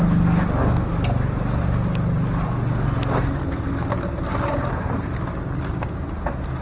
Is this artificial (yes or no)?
no